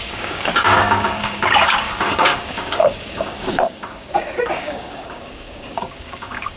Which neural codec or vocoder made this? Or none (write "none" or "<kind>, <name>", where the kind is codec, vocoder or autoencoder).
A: codec, DAC